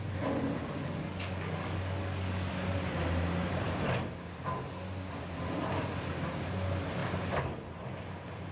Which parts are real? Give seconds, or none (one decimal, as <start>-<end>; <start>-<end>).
0.0-0.8; 2.5-8.5